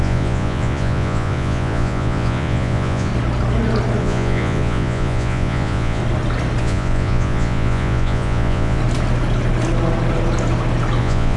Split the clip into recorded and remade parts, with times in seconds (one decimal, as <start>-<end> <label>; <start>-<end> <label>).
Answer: 0.0-3.1 remade; 3.1-4.0 recorded; 4.0-6.0 remade; 6.0-6.6 recorded; 6.6-8.8 remade; 8.8-11.0 recorded; 11.0-11.4 remade